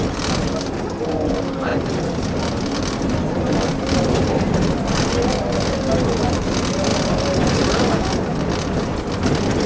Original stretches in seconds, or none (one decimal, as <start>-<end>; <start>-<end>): 0.0-9.7